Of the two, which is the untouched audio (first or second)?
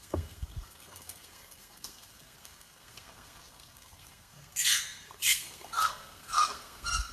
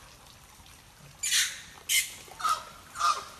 second